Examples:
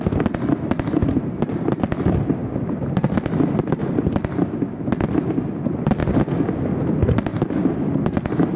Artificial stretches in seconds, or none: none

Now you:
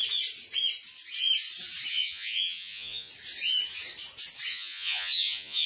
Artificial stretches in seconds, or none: 1.9-3.1; 4.5-5.7

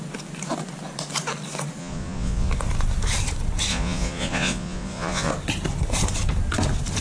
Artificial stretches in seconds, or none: 1.8-2.5; 3.7-5.3

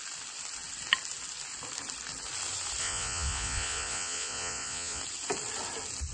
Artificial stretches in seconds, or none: 2.8-5.0

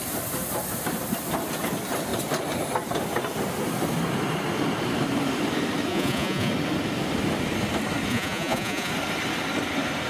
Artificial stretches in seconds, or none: 5.9-6.5; 8.1-8.9

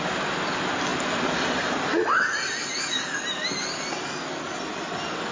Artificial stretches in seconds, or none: none

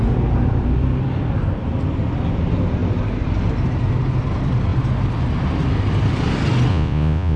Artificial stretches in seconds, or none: 6.7-7.4

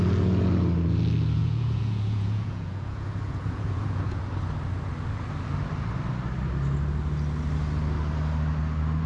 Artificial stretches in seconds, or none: 1.4-4.2